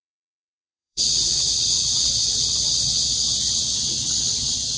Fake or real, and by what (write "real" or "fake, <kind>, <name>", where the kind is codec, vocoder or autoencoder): fake, vocoder, WaveNeXt